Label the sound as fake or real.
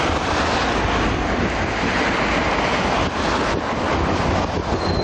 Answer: real